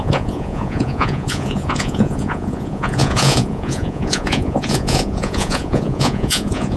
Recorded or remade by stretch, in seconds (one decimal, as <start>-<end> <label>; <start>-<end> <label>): 0.0-6.8 remade